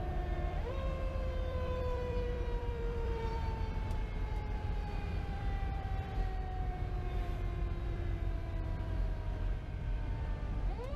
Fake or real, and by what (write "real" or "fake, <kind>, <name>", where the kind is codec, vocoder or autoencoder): fake, vocoder, BigVGAN v2